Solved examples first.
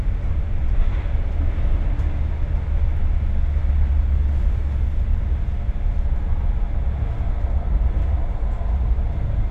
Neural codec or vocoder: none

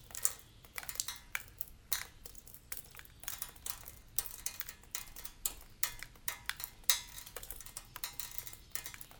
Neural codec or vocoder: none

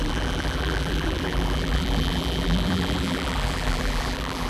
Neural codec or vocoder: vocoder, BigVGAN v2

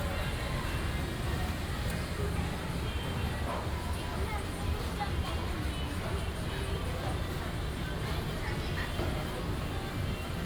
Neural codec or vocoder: none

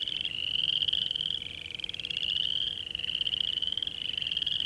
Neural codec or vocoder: none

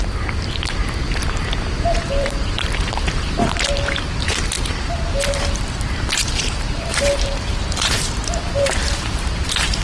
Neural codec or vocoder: vocoder, BigVGAN v2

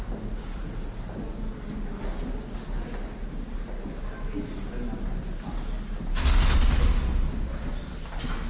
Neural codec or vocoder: none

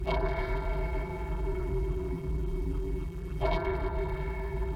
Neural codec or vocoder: vocoder, BigVGAN v2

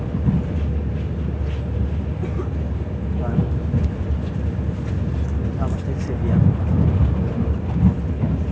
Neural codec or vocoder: none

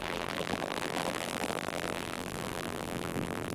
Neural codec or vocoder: vocoder, BigVGAN v2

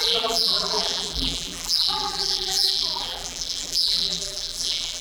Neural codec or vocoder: vocoder, BigVGAN v2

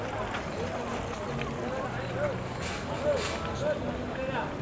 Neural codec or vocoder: none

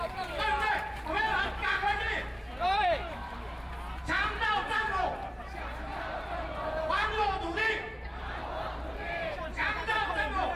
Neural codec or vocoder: vocoder, BigVGAN v2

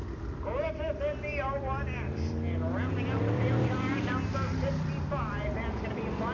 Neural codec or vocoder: vocoder, BigVGAN v2